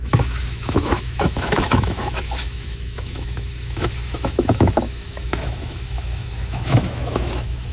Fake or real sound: fake